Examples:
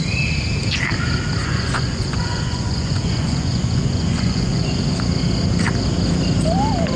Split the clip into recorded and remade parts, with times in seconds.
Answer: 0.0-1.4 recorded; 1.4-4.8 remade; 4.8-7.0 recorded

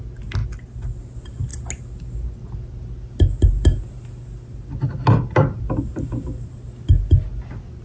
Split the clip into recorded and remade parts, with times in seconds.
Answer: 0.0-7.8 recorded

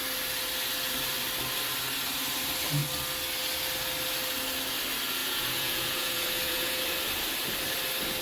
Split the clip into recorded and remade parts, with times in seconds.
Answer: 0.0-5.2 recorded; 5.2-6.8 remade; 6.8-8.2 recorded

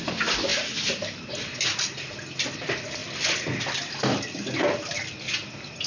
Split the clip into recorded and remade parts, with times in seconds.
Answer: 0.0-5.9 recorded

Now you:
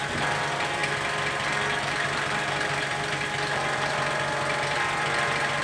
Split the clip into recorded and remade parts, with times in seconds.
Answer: 0.0-5.6 recorded

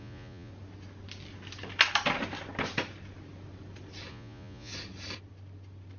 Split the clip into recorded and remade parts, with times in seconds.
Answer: 0.0-0.5 remade; 0.5-4.1 recorded; 4.1-4.7 remade; 4.7-6.0 recorded

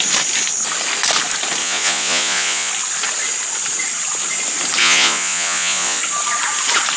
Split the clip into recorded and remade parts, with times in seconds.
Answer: 0.0-1.6 recorded; 1.6-2.7 remade; 2.7-4.8 recorded; 4.8-6.0 remade; 6.0-7.0 recorded